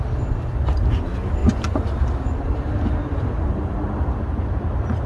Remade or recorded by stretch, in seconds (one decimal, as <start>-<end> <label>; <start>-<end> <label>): 0.0-1.4 recorded; 1.4-4.5 remade; 4.5-5.1 recorded